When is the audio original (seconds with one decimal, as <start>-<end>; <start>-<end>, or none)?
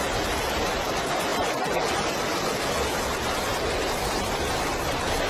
0.0-5.3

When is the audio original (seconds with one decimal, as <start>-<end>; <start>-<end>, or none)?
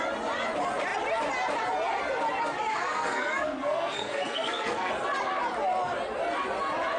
0.0-2.7; 4.9-7.0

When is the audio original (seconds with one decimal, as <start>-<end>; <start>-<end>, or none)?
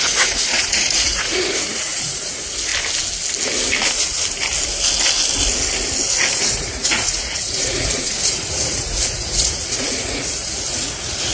2.7-6.3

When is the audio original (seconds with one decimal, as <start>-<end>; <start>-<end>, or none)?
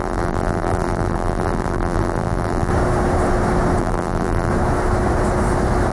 2.7-3.8; 4.5-5.9